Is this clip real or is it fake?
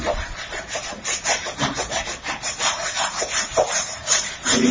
fake